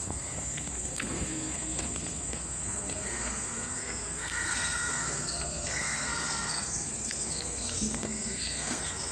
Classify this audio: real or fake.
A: fake